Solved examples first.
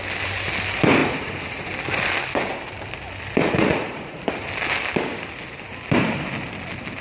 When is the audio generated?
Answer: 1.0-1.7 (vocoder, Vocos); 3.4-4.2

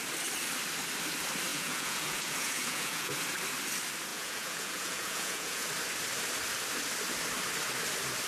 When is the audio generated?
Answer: 1.5-3.1 (vocoder, Vocos); 4.1-5.7

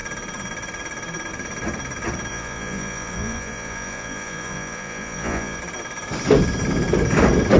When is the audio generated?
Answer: 2.3-5.6 (vocoder, Vocos)

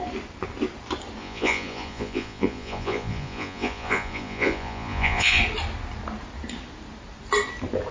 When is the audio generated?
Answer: 1.2-5.4 (vocoder, Vocos)

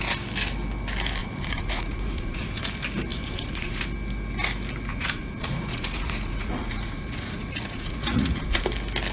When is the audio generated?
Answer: 1.2-2.6 (vocoder, Vocos); 3.1-3.8; 4.9-8.6

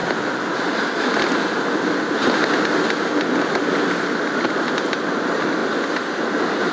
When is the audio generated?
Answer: none